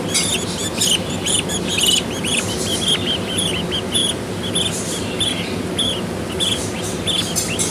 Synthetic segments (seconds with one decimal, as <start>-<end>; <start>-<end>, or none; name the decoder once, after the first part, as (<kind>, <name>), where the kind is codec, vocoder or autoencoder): none